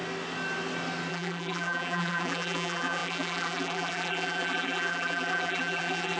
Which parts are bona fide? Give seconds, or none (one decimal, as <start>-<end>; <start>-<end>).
0.0-1.1